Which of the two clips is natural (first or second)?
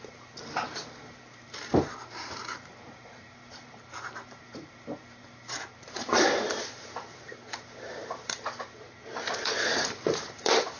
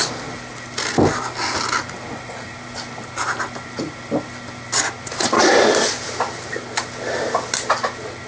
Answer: second